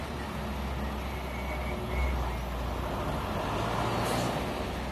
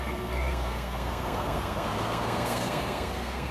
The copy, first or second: second